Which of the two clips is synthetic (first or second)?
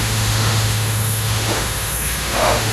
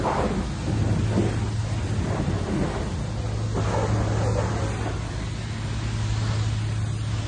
first